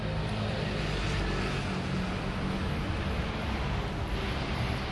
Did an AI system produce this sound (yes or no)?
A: no